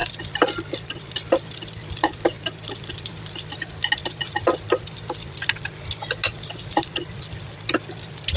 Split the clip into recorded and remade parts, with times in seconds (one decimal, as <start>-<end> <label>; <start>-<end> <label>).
0.0-8.4 recorded